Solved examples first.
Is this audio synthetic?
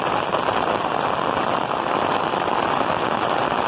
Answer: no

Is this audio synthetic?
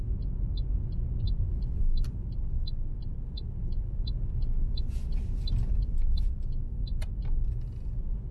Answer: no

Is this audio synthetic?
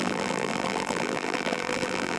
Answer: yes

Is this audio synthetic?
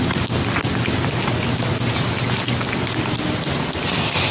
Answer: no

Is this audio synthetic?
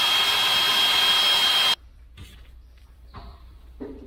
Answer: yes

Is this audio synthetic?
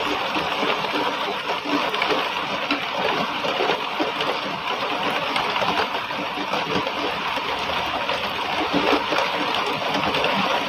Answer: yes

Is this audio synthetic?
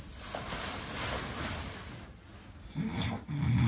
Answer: no